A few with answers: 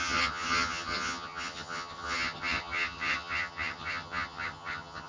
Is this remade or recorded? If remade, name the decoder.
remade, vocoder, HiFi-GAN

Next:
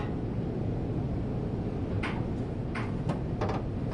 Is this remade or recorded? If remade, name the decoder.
recorded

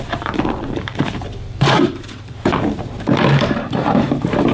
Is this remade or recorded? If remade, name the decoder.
remade, vocoder, BigVGAN v2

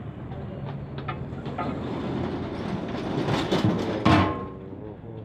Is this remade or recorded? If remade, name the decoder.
recorded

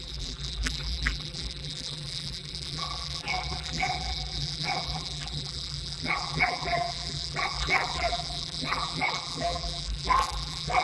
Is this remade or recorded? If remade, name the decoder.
remade, vocoder, BigVGAN v2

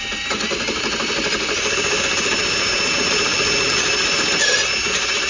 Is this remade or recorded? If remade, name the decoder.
recorded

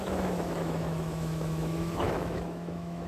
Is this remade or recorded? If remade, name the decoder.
remade, autoencoder, DAC-VAE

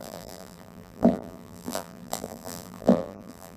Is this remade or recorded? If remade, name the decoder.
remade, vocoder, BigVGAN v2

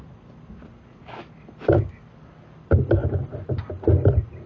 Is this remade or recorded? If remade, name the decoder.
recorded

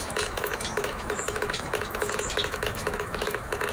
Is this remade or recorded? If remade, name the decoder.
remade, autoencoder, DAC-VAE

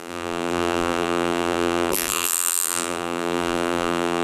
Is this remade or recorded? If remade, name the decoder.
remade, vocoder, BigVGAN v2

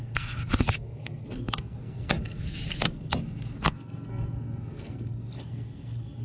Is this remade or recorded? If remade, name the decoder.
remade, codec, SNAC